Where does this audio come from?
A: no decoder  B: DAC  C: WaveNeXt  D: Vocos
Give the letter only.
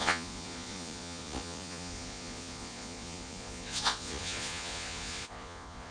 D